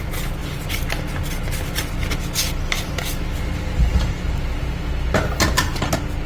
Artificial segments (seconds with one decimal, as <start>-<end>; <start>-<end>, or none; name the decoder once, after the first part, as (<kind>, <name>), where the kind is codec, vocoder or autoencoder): none